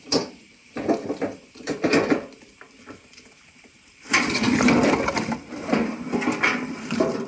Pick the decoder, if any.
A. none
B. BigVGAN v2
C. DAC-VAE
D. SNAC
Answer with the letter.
B